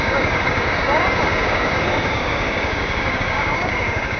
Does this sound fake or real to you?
fake